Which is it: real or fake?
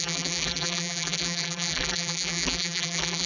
fake